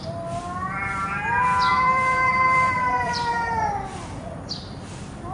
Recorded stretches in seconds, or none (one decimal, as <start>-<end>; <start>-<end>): 0.0-1.7; 4.4-5.3